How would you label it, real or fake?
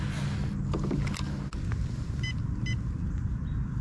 real